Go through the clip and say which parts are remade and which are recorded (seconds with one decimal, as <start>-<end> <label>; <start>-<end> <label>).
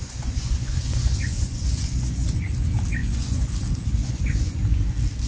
0.0-2.5 remade; 2.5-3.0 recorded; 3.0-3.5 remade; 3.5-4.0 recorded; 4.0-4.6 remade; 4.6-5.3 recorded